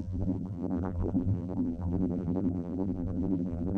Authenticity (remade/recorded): remade